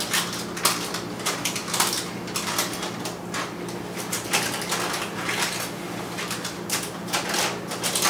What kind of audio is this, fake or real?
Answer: real